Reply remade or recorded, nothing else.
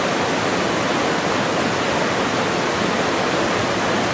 recorded